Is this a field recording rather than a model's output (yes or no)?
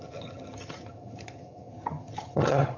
no